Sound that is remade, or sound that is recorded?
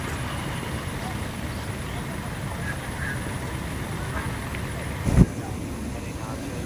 recorded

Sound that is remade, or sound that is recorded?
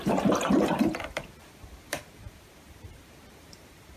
remade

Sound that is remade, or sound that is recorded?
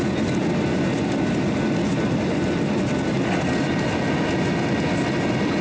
recorded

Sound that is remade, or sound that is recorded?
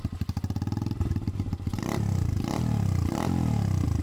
recorded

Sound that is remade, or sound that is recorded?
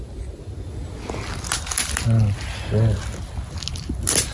recorded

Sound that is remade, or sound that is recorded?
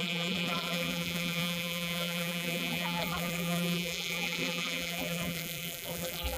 remade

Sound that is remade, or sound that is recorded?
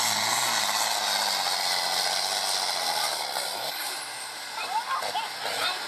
recorded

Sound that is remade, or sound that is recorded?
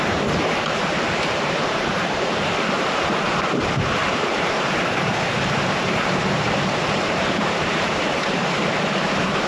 remade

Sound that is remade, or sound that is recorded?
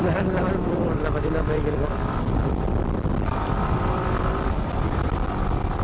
remade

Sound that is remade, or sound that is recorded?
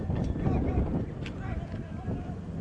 recorded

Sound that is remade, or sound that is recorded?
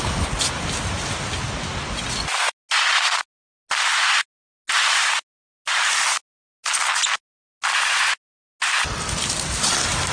recorded